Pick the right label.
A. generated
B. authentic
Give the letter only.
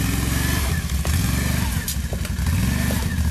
B